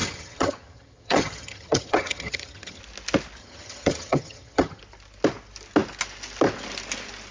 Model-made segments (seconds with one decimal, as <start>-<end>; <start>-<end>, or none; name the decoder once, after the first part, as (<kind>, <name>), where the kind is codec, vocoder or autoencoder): 0.0-2.8 (vocoder, HiFi-GAN); 3.4-4.8